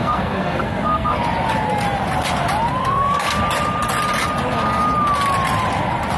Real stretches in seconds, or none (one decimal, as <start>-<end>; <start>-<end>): 1.2-2.8; 3.4-6.2